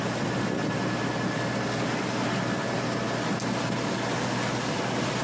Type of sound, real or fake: real